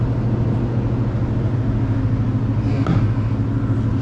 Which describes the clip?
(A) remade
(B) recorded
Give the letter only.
B